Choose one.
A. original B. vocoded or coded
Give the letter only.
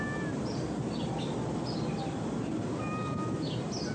A